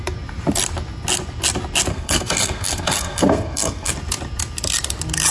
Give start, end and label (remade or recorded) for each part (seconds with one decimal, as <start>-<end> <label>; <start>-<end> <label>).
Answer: 0.0-1.9 recorded; 1.9-3.9 remade; 3.9-5.3 recorded